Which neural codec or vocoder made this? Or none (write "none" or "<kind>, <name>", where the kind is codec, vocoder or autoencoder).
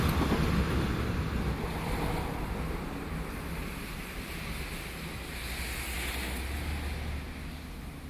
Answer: none